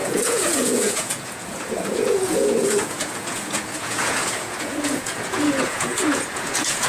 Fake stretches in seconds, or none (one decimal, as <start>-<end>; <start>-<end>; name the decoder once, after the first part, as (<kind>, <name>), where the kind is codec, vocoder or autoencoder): 0.0-6.9 (vocoder, Vocos)